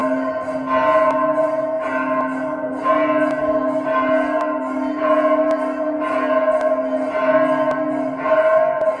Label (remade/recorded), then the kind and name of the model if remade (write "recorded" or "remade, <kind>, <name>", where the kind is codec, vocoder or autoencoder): recorded